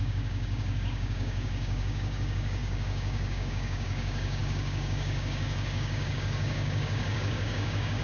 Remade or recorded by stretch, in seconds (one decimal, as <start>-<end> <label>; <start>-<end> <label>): 0.0-8.0 remade